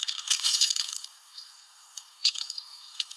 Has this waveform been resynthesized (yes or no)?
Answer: yes